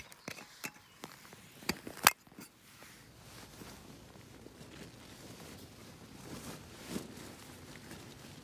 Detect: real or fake real